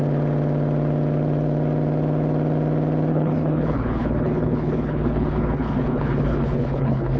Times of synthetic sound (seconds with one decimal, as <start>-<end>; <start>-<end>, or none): 3.1-7.2